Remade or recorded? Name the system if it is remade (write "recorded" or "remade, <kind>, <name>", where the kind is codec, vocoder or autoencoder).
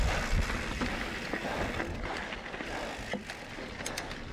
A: recorded